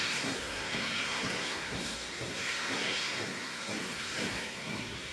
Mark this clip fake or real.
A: fake